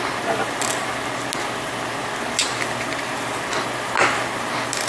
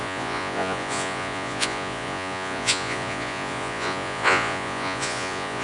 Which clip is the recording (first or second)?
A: first